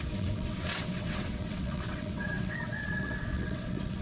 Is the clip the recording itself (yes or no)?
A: no